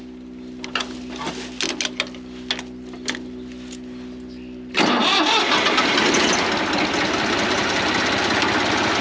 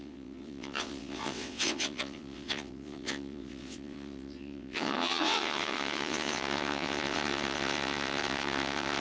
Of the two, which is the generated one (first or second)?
second